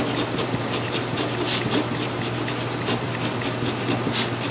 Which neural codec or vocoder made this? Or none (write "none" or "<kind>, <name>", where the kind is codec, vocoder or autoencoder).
none